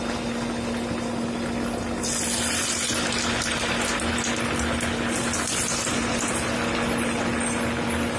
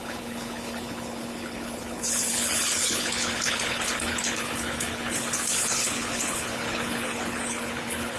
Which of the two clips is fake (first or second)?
second